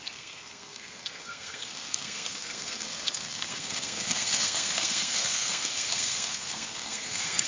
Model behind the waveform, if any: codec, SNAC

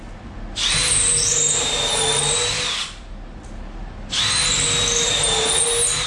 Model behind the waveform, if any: none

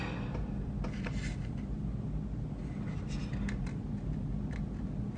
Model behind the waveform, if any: none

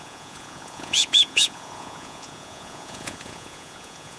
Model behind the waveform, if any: vocoder, Vocos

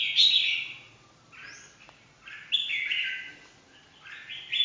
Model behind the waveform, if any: none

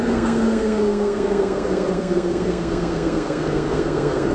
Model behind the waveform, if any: codec, SNAC